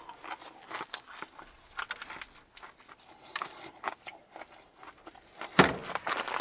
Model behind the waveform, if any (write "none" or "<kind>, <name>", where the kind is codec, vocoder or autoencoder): none